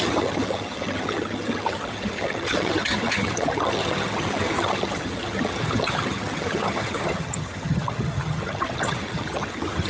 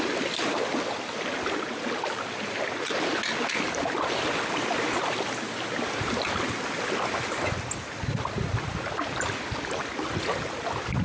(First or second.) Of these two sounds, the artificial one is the first